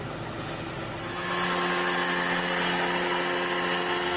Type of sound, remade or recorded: recorded